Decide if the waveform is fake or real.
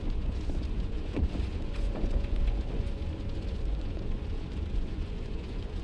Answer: fake